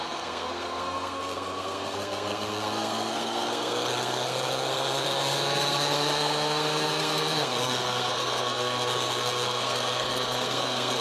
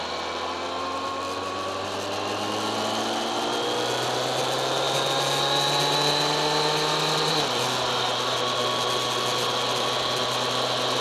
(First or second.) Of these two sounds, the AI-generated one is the first